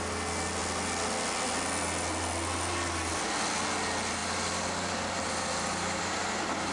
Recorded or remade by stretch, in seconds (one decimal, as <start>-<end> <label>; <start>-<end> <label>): 0.0-6.7 recorded